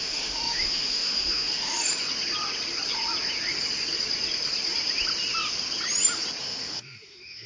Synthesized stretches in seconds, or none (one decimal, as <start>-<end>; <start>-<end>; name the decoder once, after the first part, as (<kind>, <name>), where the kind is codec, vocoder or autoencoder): 0.0-1.9 (autoencoder, DAC-VAE); 6.4-7.5